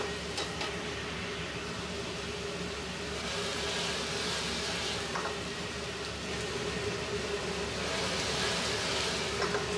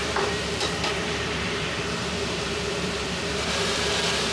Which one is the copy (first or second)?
second